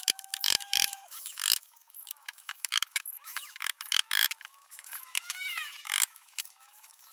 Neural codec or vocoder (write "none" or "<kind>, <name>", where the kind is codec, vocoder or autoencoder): autoencoder, DAC-VAE